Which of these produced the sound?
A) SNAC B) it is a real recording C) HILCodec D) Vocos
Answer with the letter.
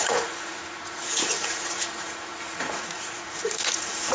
D